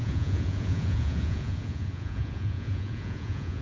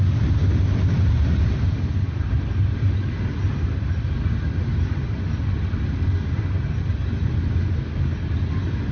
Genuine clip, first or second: second